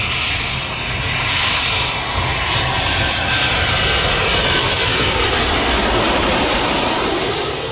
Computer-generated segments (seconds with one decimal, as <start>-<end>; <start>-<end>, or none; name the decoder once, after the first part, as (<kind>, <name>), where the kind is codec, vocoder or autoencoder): 4.6-5.2 (codec, SNAC)